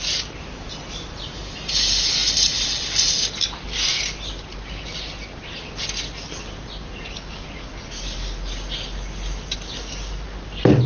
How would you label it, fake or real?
real